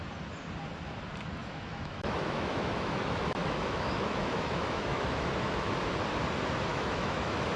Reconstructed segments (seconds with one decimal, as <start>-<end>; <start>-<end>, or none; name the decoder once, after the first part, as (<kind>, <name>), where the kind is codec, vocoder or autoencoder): 1.4-5.7 (autoencoder, DAC-VAE); 6.7-7.6